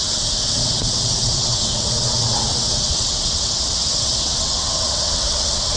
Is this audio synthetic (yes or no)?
yes